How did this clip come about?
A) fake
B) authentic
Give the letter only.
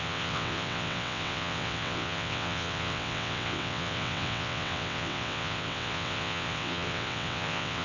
A